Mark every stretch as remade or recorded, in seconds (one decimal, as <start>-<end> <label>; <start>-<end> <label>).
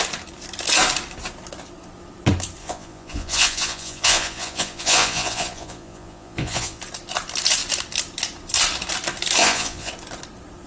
0.0-2.6 recorded; 2.6-6.8 remade; 6.8-9.4 recorded; 9.4-9.9 remade; 9.9-10.7 recorded